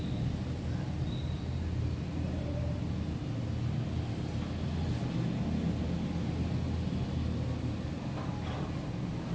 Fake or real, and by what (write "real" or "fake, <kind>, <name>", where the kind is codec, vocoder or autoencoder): real